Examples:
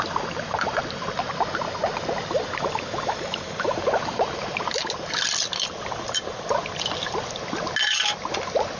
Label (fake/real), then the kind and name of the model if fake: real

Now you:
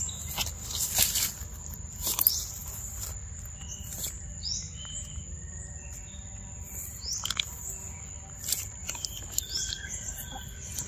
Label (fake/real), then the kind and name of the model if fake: real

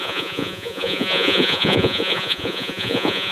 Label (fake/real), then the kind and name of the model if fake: fake, vocoder, Vocos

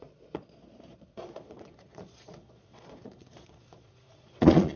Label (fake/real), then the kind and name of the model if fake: fake, vocoder, Vocos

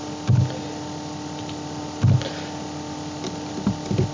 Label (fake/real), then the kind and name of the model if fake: real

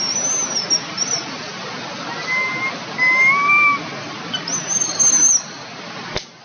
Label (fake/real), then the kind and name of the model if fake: real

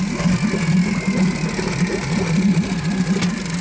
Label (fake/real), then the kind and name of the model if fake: real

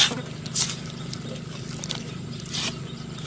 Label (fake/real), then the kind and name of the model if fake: real